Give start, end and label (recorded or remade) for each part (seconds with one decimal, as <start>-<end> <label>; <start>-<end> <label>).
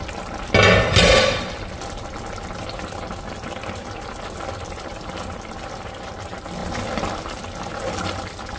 0.0-8.6 recorded